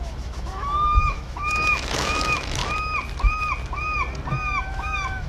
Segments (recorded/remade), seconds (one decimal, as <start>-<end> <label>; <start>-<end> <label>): 0.0-2.6 remade; 2.6-4.6 recorded; 4.6-5.3 remade